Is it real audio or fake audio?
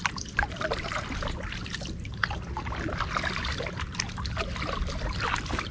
real